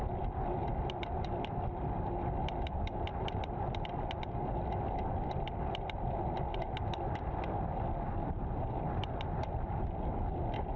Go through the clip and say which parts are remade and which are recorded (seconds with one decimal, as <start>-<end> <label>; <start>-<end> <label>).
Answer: 0.0-10.8 recorded